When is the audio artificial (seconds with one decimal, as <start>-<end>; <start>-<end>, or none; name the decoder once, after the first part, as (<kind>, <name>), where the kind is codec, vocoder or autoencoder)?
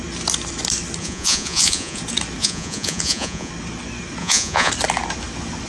1.0-2.0 (vocoder, Vocos); 2.4-3.5; 4.2-4.7